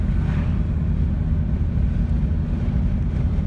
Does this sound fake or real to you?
real